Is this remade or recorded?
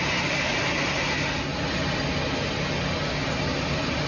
recorded